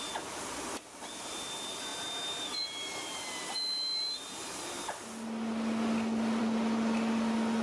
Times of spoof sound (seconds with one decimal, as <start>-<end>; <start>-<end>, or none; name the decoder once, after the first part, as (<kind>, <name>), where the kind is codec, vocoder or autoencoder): none